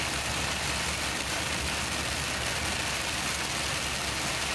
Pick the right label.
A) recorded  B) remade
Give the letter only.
A